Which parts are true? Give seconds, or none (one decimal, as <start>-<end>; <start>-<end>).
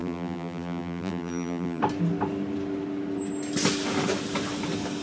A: 1.8-5.0